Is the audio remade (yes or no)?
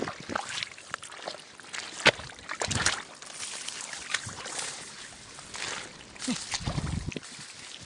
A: no